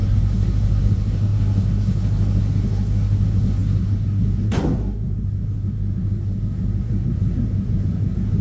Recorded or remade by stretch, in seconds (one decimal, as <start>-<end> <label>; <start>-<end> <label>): 0.0-8.4 remade